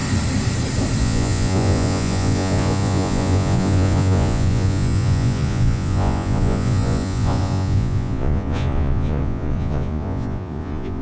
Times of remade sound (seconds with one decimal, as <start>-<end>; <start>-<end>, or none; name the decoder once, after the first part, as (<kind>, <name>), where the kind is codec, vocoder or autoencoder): 1.0-11.0 (vocoder, Vocos)